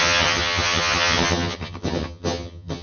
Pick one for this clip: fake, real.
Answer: fake